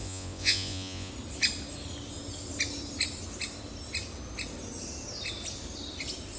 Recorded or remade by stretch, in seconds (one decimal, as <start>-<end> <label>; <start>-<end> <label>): 0.0-1.1 remade; 1.1-6.4 recorded